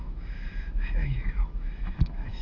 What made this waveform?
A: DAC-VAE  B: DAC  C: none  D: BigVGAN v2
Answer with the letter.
A